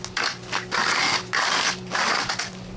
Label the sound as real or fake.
real